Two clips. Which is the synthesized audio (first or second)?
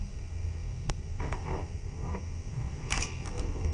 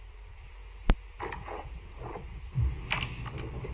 first